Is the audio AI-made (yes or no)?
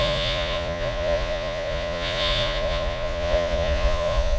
yes